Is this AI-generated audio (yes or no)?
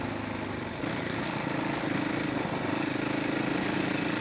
no